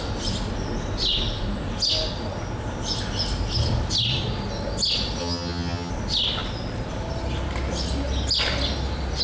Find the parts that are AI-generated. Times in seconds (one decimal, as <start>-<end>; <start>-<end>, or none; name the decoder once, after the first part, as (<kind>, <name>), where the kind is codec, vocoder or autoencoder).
5.2-5.9 (vocoder, HiFi-GAN)